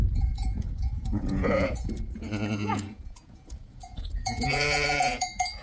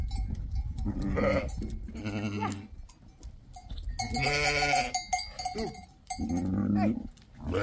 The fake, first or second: first